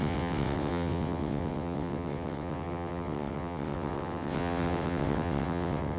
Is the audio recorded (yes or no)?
no